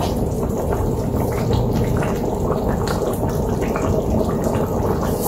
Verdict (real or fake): real